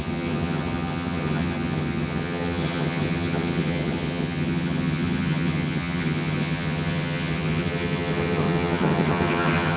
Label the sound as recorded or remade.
remade